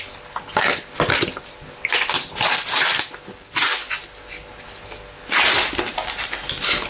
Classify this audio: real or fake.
real